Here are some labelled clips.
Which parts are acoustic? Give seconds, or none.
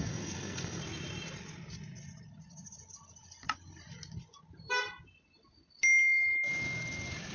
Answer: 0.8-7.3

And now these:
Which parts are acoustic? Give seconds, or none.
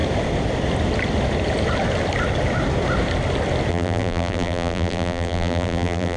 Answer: 0.0-3.7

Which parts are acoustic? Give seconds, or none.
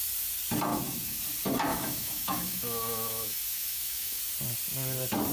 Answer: 0.0-0.7; 1.2-1.7; 4.2-5.3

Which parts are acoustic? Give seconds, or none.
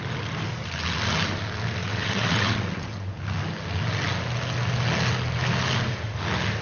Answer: 0.0-1.8; 3.1-6.6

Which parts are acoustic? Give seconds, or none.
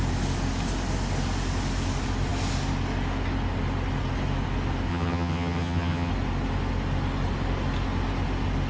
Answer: 0.0-4.9; 6.1-8.7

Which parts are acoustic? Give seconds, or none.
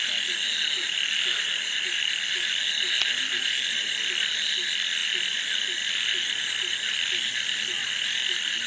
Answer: 0.0-8.7